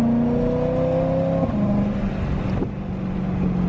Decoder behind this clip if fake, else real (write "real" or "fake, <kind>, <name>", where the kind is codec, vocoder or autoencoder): real